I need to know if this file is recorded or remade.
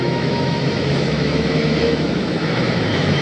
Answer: remade